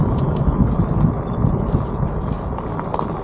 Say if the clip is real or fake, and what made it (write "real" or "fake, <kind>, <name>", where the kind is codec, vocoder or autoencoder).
real